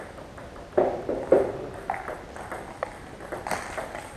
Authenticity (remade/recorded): recorded